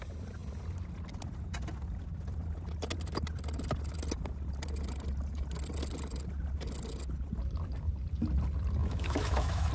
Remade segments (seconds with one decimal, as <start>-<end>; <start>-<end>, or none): 8.8-9.7